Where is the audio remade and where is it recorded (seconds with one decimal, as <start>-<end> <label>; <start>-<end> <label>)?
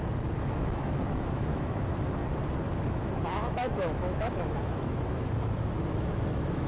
0.0-2.2 remade; 2.2-2.9 recorded; 2.9-6.7 remade